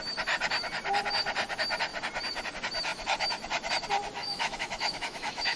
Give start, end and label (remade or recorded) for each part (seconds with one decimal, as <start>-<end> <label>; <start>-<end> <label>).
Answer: 0.0-4.2 recorded; 4.2-5.6 remade